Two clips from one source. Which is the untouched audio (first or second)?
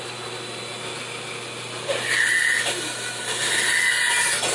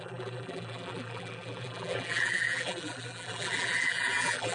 first